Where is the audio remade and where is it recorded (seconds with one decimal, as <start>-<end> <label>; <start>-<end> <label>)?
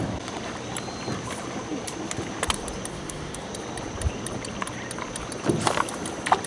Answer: 0.0-2.9 recorded; 2.9-3.5 remade; 3.5-6.5 recorded